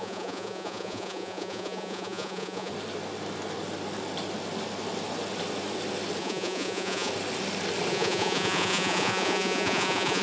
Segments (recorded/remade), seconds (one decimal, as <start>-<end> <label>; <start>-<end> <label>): 0.0-2.7 remade; 2.7-6.2 recorded; 6.2-7.1 remade; 7.1-7.9 recorded; 7.9-10.2 remade